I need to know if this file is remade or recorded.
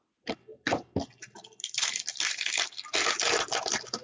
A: recorded